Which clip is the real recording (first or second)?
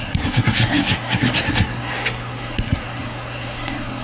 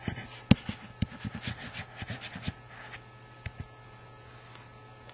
second